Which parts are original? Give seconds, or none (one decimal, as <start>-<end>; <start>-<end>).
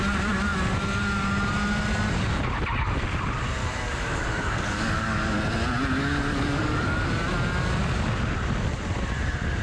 0.0-3.6; 5.4-6.0; 7.1-9.6